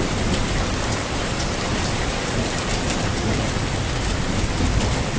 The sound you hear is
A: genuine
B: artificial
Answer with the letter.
B